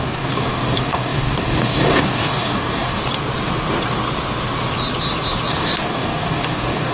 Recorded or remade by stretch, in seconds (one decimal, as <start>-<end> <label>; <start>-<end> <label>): 0.0-3.0 remade; 3.0-5.5 recorded; 5.5-6.9 remade